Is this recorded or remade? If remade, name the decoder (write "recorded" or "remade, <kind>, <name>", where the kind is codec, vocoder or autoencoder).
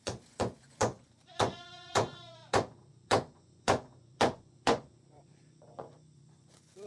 remade, vocoder, Vocos